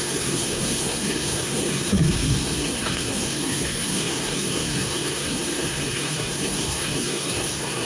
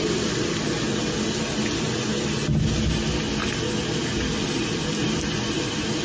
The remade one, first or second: first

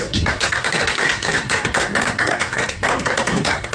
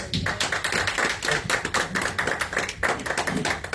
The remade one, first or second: first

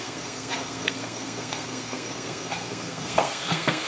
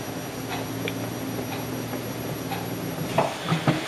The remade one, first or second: first